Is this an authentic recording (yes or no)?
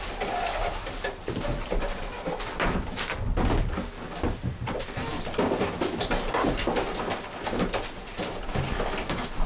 yes